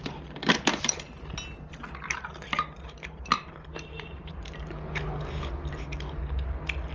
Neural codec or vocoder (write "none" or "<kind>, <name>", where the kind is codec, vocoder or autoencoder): none